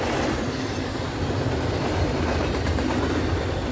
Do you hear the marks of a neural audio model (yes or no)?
no